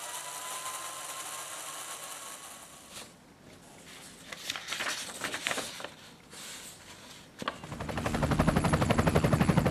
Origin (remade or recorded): recorded